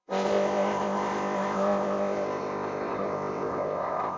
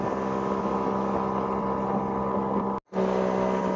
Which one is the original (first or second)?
second